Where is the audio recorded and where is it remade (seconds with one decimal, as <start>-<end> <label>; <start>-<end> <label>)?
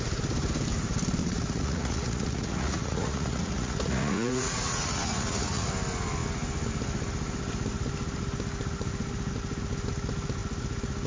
0.0-1.2 recorded; 1.2-5.7 remade; 5.7-11.1 recorded